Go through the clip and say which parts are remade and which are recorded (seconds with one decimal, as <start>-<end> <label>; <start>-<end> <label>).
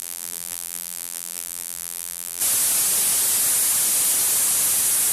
0.0-2.4 remade; 2.4-5.1 recorded